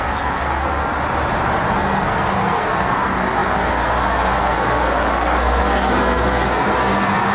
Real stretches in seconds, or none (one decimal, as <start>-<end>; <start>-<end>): 0.9-1.7